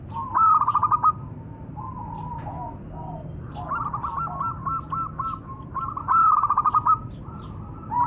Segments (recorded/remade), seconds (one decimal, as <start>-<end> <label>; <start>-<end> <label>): 0.0-6.2 recorded; 6.2-7.2 remade; 7.2-8.1 recorded